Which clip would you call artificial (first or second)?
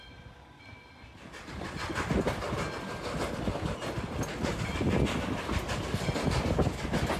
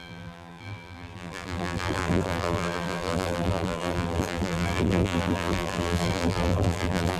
second